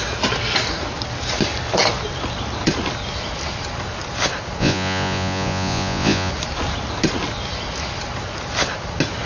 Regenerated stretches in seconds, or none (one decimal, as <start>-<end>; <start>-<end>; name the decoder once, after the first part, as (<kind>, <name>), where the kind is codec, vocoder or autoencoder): 4.6-6.3 (vocoder, Vocos)